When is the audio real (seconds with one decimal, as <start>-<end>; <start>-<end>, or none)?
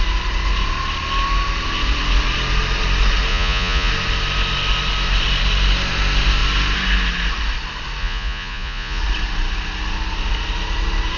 0.0-3.3; 3.9-8.0; 9.0-11.2